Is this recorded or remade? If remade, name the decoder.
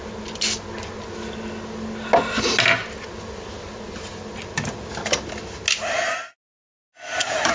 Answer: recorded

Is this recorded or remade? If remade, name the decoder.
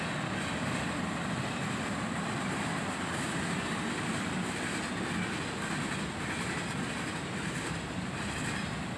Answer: recorded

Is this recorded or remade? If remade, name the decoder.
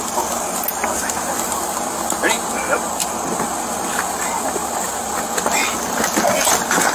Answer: recorded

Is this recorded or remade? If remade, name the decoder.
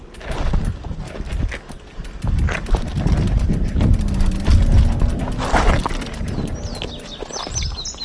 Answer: recorded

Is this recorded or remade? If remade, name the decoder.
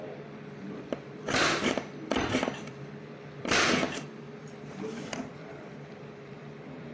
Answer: remade, vocoder, BigVGAN v2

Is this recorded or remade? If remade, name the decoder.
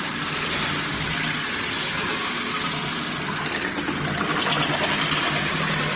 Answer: recorded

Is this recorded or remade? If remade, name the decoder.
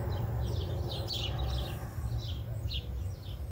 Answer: recorded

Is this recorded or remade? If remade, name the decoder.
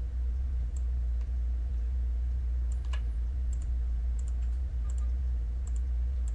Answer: remade, vocoder, BigVGAN v2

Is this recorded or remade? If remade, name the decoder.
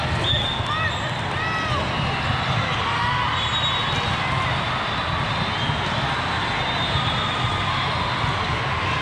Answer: recorded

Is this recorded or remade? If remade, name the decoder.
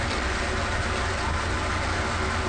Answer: recorded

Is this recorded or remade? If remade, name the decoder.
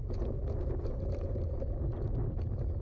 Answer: recorded